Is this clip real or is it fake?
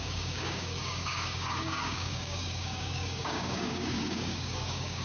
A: fake